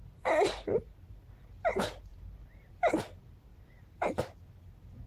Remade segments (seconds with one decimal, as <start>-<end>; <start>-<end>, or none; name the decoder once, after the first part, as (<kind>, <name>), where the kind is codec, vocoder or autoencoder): 2.1-3.0 (vocoder, BigVGAN v2)